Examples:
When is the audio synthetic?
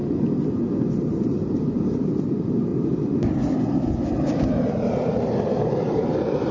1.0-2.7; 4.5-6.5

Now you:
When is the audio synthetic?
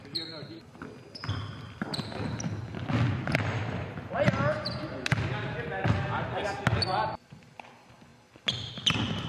none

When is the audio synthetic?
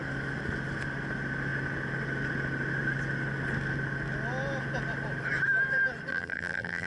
6.1-6.9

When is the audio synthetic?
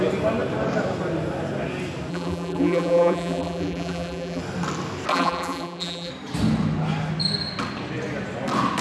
2.1-4.4; 5.1-6.1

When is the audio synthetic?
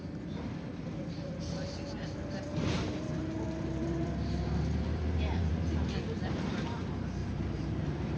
2.0-5.5; 7.2-8.2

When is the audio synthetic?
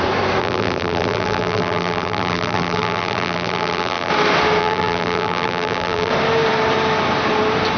0.4-4.1; 4.6-6.1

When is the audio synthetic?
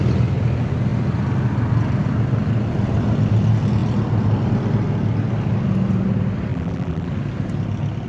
6.5-7.1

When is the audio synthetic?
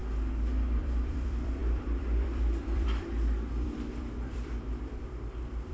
0.8-5.7